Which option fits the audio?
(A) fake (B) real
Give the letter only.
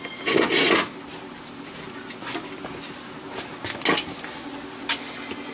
B